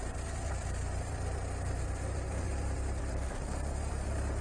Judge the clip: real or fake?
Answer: fake